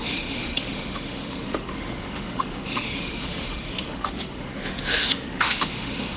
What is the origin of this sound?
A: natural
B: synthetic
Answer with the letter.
B